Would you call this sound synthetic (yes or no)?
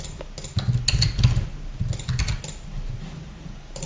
no